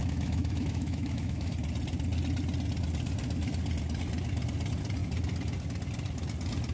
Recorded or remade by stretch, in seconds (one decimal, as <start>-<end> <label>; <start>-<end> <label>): 0.0-1.5 remade; 1.5-6.7 recorded